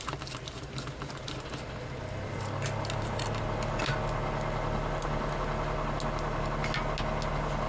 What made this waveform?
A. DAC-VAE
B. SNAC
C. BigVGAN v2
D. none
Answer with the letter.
D